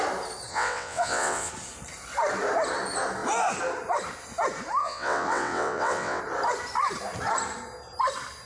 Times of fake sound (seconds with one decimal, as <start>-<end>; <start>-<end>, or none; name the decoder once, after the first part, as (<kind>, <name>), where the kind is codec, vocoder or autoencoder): 0.5-1.5 (vocoder, WaveNeXt); 4.8-6.2